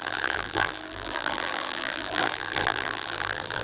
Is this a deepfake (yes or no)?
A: yes